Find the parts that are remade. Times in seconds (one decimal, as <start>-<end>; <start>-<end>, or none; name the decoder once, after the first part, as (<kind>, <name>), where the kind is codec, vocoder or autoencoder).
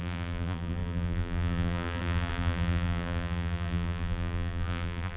0.0-5.2 (vocoder, BigVGAN v2)